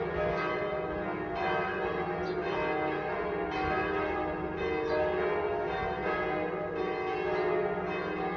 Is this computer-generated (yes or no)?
no